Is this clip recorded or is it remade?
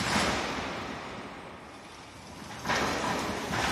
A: recorded